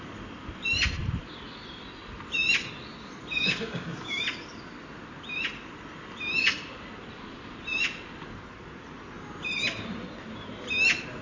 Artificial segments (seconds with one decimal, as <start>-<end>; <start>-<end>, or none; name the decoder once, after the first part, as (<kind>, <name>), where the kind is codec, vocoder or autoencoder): 3.3-4.2 (codec, DAC)